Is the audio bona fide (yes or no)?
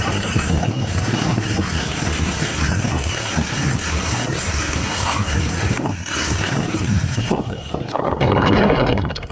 no